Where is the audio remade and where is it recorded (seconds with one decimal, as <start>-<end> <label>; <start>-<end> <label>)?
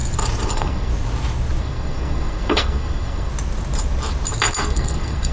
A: 0.0-0.5 recorded; 0.5-0.9 remade; 0.9-1.6 recorded; 1.6-3.3 remade; 3.3-4.6 recorded; 4.6-5.3 remade